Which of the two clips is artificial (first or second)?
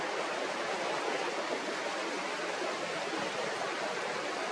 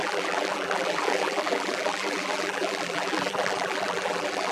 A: second